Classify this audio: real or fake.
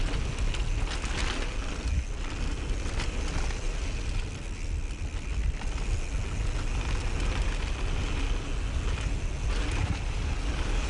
real